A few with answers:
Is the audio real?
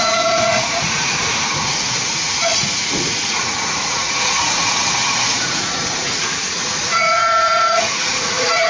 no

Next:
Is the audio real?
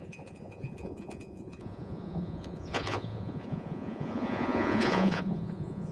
no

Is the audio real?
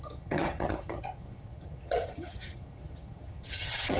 no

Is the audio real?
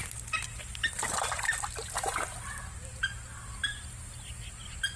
yes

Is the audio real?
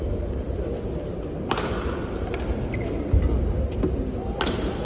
yes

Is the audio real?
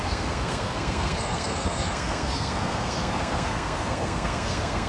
no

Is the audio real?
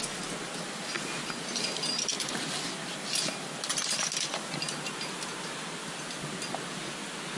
yes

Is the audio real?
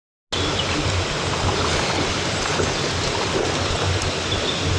yes